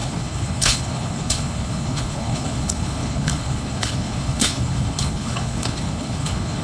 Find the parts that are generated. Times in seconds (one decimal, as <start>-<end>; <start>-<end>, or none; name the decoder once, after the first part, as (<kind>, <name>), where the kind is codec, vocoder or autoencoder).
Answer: 0.0-6.6 (codec, HILCodec)